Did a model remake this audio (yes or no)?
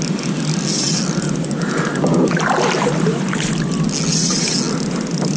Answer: no